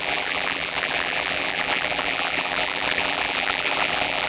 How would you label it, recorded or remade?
remade